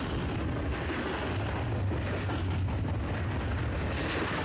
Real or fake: real